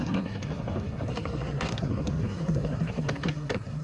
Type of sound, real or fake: fake